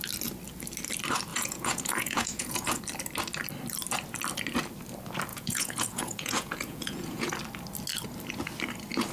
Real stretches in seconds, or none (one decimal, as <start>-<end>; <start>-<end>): 0.0-1.3; 2.8-5.3; 7.3-9.1